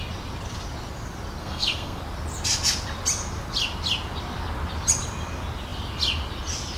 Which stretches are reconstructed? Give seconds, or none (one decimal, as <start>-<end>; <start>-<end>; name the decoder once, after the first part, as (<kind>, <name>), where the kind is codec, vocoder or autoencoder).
1.4-2.0 (codec, SNAC)